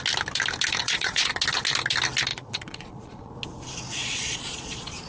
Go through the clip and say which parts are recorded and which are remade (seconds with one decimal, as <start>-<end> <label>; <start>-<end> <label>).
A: 0.0-0.8 recorded; 0.8-1.3 remade; 1.3-2.3 recorded; 2.3-3.3 remade; 3.3-4.0 recorded; 4.0-5.1 remade